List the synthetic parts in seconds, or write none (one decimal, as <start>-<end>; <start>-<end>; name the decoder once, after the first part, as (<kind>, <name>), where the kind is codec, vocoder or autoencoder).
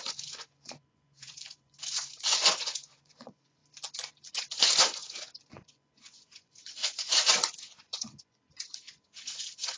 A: 0.0-3.6 (vocoder, Vocos); 4.3-9.8